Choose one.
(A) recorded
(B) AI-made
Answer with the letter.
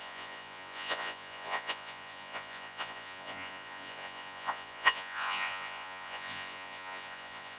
B